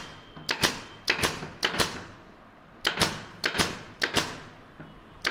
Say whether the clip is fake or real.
real